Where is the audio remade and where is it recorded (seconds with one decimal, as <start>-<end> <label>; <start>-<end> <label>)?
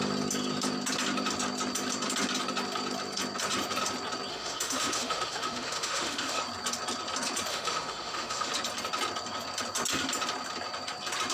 0.0-4.3 recorded; 4.3-6.4 remade; 6.4-7.5 recorded; 7.5-8.5 remade; 8.5-11.3 recorded